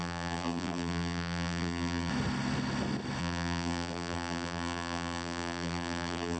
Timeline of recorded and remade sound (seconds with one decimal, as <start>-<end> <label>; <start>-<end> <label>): 0.0-2.1 remade; 2.1-3.2 recorded; 3.2-6.4 remade